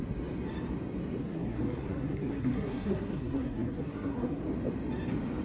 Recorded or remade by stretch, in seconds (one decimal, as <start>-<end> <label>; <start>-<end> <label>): 0.0-1.2 recorded; 1.2-4.4 remade; 4.4-5.4 recorded

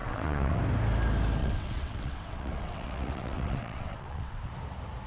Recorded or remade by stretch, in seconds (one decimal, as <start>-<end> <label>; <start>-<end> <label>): 0.0-0.6 remade; 0.6-1.4 recorded; 1.4-4.5 remade; 4.5-5.1 recorded

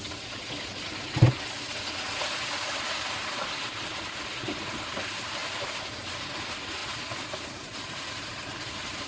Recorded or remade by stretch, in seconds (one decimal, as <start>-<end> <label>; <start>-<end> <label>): 0.0-9.1 recorded

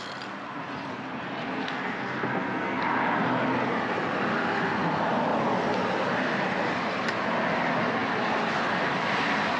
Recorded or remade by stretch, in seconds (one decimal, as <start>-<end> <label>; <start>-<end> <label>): 0.0-1.4 recorded; 1.4-2.8 remade; 2.8-9.6 recorded

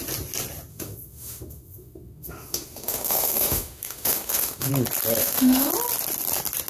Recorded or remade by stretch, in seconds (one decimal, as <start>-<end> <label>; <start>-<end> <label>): 0.0-0.7 recorded; 0.7-4.7 remade; 4.7-5.2 recorded; 5.2-5.7 remade; 5.7-6.7 recorded

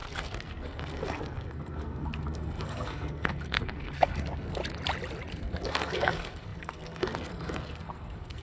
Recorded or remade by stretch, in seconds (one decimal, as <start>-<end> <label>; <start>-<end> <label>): 0.0-4.6 remade; 4.6-5.3 recorded; 5.3-8.4 remade

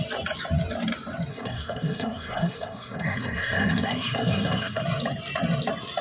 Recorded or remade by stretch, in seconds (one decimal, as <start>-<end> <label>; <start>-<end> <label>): 0.0-1.3 recorded; 1.3-4.8 remade; 4.8-6.0 recorded